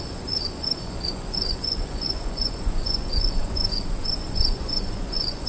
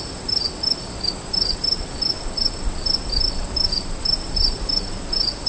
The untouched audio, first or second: second